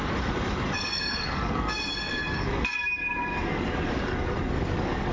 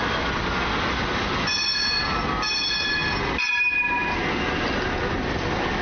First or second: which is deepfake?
first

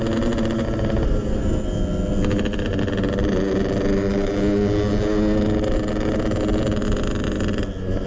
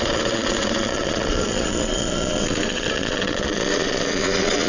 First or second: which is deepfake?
second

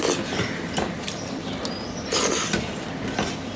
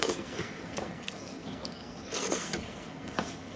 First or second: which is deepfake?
second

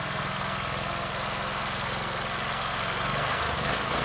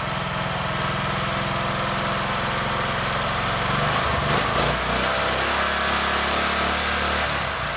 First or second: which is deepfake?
first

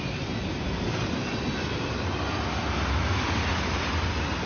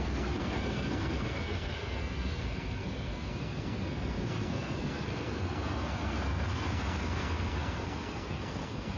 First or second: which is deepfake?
second